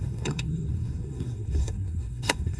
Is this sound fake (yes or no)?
yes